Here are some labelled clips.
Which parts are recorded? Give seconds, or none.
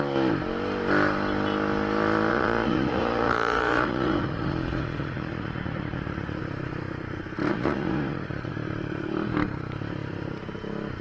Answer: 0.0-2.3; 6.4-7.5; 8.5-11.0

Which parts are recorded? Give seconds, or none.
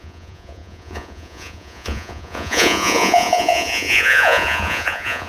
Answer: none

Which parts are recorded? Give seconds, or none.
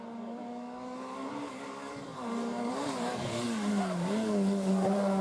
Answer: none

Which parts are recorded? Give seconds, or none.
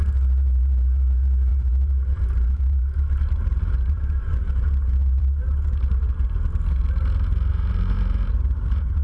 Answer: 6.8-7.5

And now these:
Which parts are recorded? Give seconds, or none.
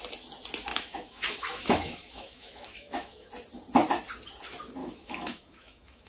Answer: 0.0-0.7; 3.3-4.8